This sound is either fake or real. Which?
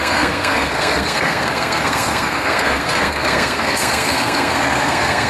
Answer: fake